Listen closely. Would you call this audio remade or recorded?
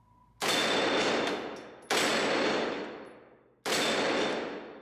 recorded